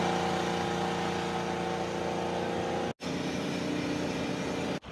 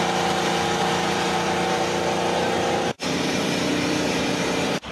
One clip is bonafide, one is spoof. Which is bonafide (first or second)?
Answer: first